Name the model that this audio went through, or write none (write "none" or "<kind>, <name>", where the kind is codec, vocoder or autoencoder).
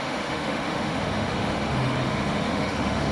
autoencoder, DAC-VAE